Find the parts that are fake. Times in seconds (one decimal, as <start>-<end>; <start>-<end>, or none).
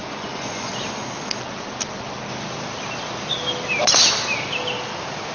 0.0-0.7